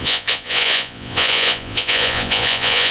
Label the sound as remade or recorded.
remade